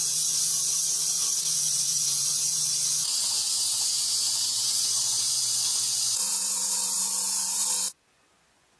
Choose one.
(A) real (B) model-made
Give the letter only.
B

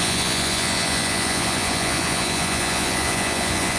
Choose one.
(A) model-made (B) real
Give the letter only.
A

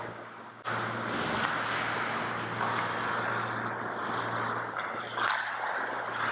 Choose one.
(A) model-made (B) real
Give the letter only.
B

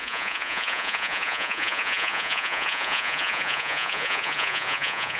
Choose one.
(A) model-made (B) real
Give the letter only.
A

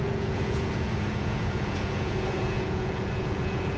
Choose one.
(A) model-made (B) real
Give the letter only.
A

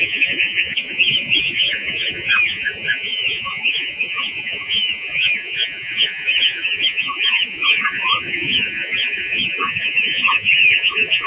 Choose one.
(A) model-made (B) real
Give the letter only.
A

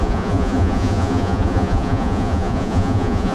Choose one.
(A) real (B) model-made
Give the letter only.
B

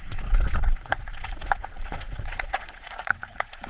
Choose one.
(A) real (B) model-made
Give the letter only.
B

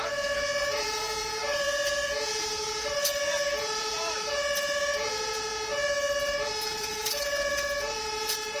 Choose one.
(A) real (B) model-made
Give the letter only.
B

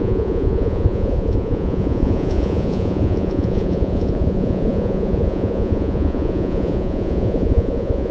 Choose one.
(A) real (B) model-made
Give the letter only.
B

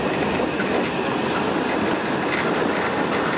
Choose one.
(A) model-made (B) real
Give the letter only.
B